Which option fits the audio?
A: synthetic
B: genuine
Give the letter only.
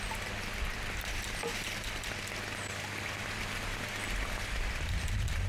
B